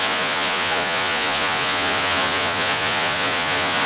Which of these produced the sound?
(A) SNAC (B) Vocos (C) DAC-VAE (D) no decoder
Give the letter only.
B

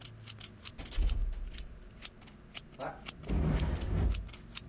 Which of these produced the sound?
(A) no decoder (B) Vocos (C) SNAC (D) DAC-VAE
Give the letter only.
A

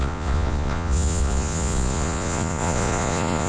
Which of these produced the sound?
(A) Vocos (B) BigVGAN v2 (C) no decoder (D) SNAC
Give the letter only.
A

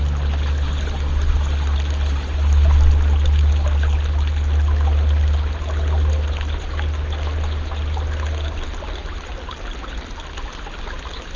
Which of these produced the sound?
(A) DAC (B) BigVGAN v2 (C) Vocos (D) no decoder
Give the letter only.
D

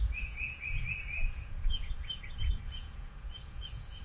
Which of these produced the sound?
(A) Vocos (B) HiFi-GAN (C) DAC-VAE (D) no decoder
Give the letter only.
A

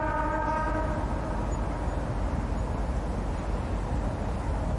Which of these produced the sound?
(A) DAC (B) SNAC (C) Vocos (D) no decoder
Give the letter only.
D